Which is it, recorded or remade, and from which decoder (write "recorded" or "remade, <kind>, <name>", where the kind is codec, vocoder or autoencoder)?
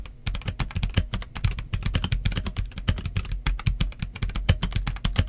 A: recorded